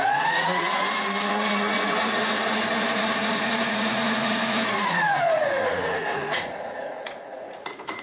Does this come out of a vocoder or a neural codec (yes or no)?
yes